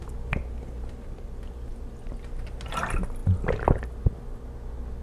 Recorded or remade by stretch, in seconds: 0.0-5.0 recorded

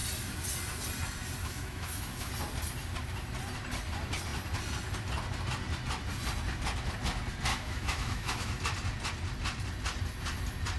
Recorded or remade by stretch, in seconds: 0.0-1.4 recorded; 1.4-2.3 remade; 2.3-7.5 recorded; 7.5-8.6 remade; 8.6-10.8 recorded

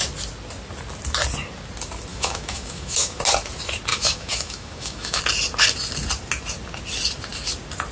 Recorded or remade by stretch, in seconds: 0.0-2.1 recorded; 2.1-3.2 remade; 3.2-3.9 recorded; 3.9-5.2 remade; 5.2-7.9 recorded

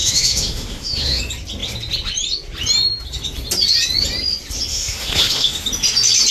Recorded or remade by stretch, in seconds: 0.0-1.2 remade; 1.2-4.7 recorded; 4.7-5.6 remade; 5.6-6.3 recorded

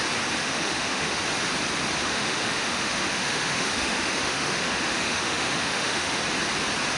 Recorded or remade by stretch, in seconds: 0.0-0.4 recorded; 0.4-1.2 remade; 1.2-2.0 recorded; 2.0-6.2 remade; 6.2-7.0 recorded